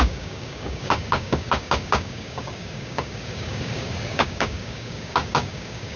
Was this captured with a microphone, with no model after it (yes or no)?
no